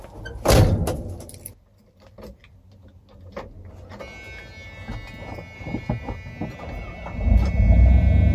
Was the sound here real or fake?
real